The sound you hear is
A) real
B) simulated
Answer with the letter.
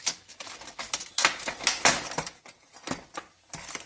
A